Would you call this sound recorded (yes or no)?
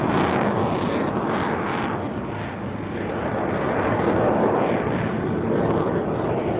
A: yes